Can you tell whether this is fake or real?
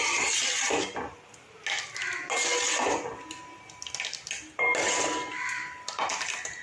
real